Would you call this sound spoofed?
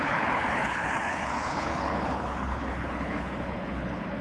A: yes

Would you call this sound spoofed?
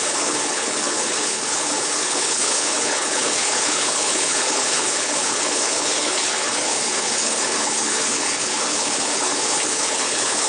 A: yes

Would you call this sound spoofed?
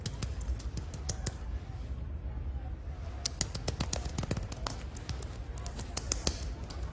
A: no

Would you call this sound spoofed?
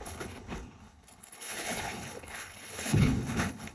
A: yes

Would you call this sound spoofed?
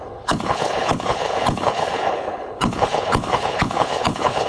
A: yes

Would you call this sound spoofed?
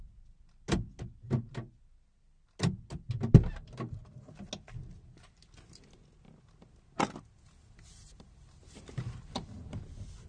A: no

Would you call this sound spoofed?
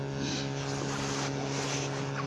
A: no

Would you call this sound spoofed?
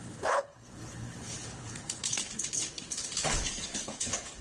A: yes